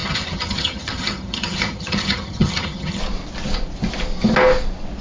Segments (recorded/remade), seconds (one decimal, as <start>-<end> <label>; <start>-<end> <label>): 0.0-3.0 remade; 3.0-5.0 recorded